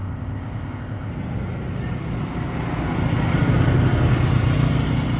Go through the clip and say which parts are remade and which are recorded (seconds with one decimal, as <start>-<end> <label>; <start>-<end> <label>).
0.0-1.1 remade; 1.1-5.2 recorded